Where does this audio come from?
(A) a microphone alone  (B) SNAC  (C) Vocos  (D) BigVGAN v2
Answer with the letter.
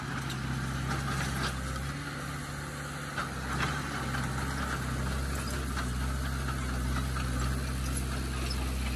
A